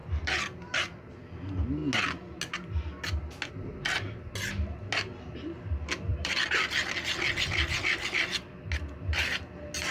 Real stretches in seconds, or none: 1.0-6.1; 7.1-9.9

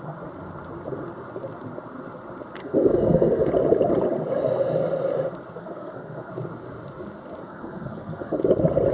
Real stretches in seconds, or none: 0.0-2.6; 3.5-5.6; 6.3-7.4; 8.4-8.9

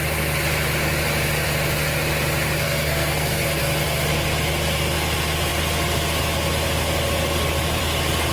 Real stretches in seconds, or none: 0.0-2.6; 3.6-8.3

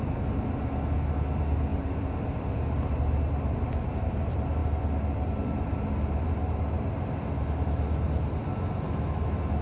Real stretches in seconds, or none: 0.0-1.7; 3.0-4.6; 6.3-9.6

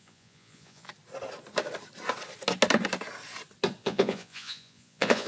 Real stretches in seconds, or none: 0.9-3.8

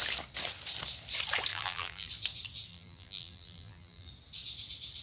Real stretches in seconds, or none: 0.0-1.5; 2.1-2.7; 4.1-5.0